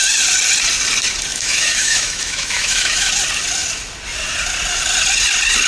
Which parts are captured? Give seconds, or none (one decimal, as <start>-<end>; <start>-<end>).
0.0-1.3; 3.1-5.7